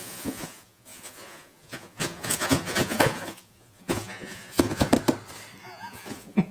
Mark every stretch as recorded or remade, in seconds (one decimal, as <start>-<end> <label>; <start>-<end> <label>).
0.0-4.9 remade; 4.9-5.6 recorded; 5.6-6.5 remade